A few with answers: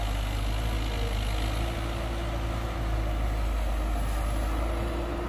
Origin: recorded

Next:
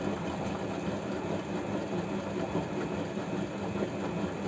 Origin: recorded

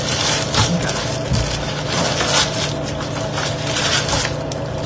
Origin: recorded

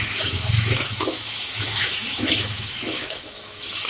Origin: remade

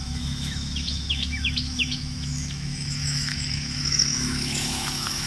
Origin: remade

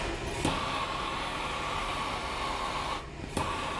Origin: recorded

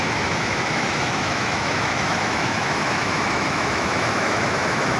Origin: remade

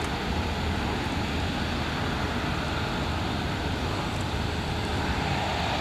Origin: recorded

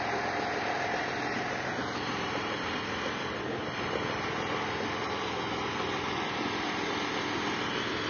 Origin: recorded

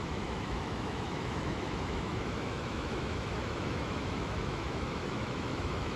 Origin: remade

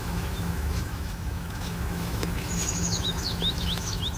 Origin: remade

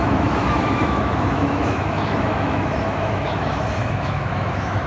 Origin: remade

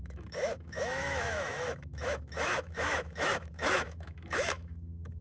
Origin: remade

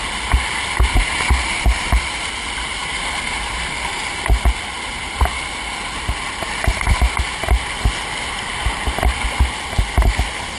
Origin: recorded